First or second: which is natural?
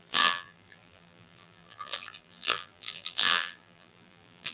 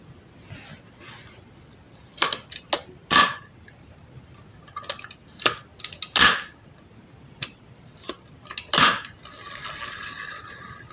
second